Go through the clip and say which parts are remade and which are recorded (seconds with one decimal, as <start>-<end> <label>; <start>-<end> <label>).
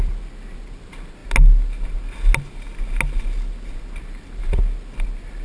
0.0-5.4 recorded